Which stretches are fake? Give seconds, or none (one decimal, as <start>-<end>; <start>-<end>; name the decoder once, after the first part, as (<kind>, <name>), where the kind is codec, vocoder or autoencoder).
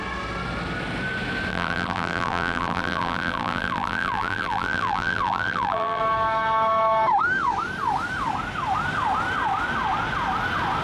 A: 1.5-6.0 (vocoder, BigVGAN v2)